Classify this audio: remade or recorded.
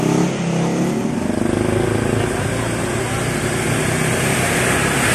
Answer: recorded